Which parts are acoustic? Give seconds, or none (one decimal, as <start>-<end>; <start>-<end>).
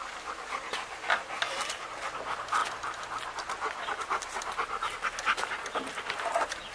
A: 0.0-6.7